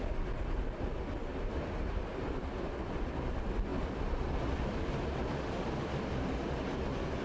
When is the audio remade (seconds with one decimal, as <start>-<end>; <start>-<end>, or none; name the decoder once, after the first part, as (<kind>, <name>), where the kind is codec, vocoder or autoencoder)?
3.7-6.3 (vocoder, BigVGAN v2)